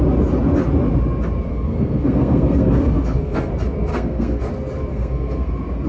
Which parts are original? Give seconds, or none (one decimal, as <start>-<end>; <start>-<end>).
0.0-1.5; 3.5-3.9; 4.4-4.9; 5.5-5.9